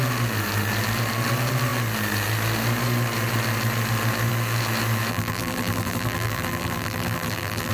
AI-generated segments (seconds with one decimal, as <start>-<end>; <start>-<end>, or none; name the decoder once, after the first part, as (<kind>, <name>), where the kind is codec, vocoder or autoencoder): 5.1-7.7 (vocoder, BigVGAN v2)

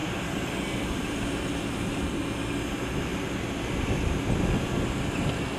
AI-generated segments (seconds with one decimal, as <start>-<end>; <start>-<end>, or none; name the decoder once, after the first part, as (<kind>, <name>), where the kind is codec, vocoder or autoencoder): 0.0-2.2 (vocoder, BigVGAN v2); 3.1-4.2

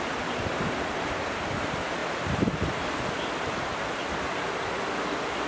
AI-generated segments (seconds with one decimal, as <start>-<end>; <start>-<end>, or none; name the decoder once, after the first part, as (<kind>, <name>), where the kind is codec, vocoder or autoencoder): 0.0-2.0 (vocoder, BigVGAN v2)

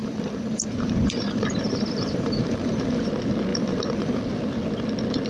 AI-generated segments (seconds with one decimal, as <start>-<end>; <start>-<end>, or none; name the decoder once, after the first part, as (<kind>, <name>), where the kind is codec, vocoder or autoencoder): 0.0-3.1 (vocoder, BigVGAN v2); 3.5-4.2

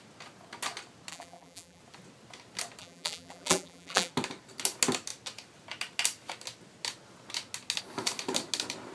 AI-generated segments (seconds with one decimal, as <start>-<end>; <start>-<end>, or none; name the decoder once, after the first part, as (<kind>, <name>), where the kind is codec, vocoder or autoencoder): 1.1-1.8 (vocoder, BigVGAN v2); 2.8-4.1

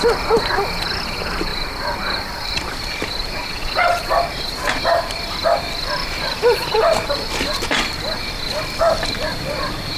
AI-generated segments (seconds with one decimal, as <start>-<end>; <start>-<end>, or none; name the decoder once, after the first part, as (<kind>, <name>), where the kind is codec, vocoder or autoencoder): 1.5-3.7 (vocoder, BigVGAN v2); 6.0-7.1